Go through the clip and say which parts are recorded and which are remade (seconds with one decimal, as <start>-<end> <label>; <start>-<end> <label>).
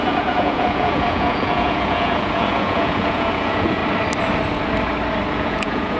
0.0-3.8 remade; 3.8-5.3 recorded; 5.3-6.0 remade